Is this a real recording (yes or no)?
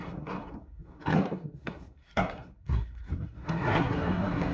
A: no